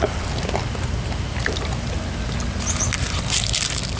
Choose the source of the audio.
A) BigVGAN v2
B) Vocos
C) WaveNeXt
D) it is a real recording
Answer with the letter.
D